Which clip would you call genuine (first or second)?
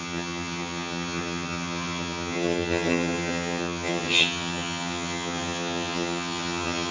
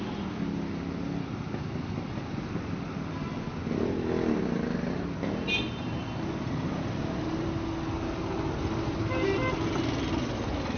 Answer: second